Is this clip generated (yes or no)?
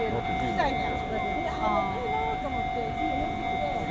no